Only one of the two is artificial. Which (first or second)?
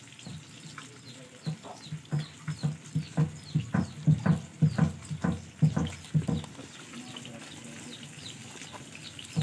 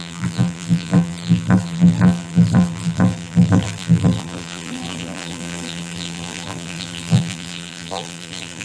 second